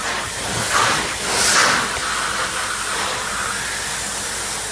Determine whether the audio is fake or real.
real